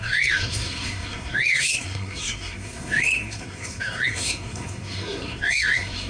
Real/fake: fake